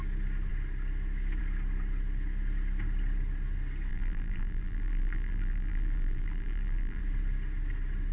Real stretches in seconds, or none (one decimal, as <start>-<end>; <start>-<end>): 0.0-3.9; 7.0-8.1